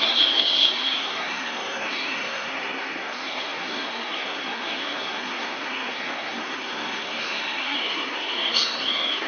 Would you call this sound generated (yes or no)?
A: yes